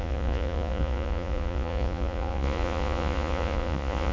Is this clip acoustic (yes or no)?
no